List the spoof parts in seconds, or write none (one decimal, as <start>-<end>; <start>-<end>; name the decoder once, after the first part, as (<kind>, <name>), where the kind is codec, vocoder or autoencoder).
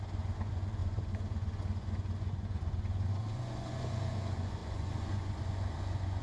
0.0-6.2 (vocoder, Vocos)